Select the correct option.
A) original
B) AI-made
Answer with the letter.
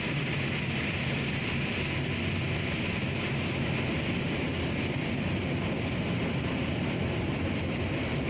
A